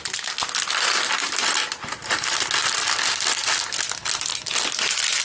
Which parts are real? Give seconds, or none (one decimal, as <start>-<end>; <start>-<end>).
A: 0.0-5.2